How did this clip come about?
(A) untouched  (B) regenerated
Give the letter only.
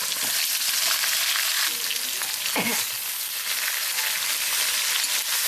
A